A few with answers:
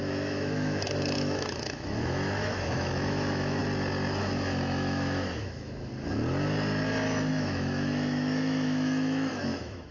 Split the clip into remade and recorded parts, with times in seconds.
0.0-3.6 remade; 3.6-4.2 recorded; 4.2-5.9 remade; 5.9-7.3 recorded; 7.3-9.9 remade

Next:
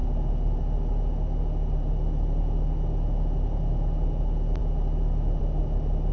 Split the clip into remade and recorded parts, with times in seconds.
0.0-6.1 recorded

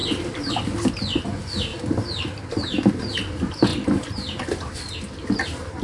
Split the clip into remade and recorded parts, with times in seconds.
0.0-0.5 remade; 0.5-3.7 recorded; 3.7-4.4 remade; 4.4-5.8 recorded

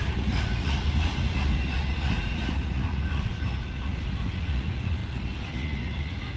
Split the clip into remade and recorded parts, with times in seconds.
0.0-6.4 remade